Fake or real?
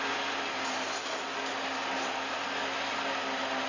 real